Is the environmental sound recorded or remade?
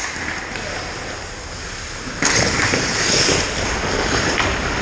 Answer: recorded